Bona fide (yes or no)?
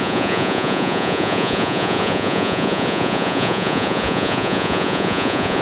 no